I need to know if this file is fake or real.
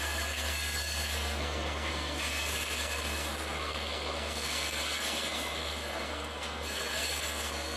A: fake